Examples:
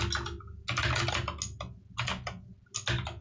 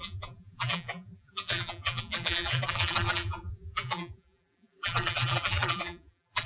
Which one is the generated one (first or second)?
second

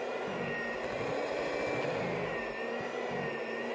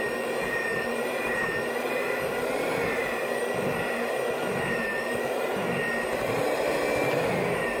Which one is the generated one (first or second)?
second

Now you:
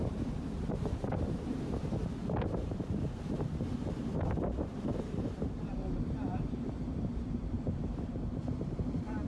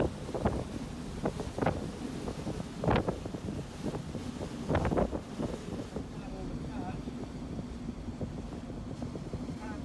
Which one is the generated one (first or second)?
first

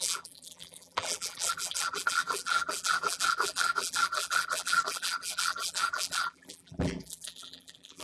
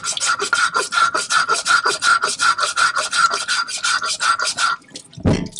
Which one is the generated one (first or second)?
first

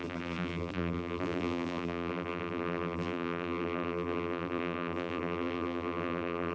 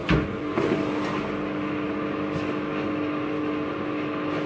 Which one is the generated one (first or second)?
first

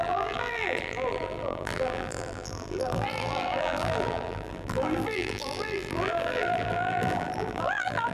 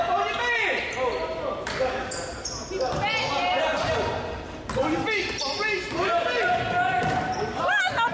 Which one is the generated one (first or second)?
first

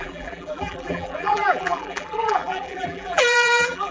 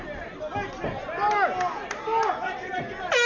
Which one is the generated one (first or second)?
first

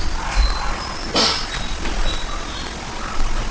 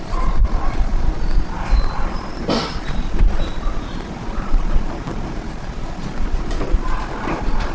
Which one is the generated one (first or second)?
second